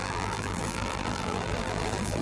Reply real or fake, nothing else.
fake